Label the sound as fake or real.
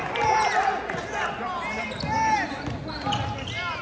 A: real